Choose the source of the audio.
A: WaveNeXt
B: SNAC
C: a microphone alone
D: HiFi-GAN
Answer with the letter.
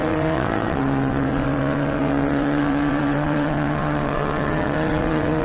A